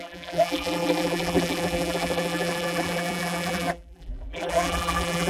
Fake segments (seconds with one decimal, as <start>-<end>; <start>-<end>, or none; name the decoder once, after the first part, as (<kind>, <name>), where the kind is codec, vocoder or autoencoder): 0.0-5.3 (vocoder, BigVGAN v2)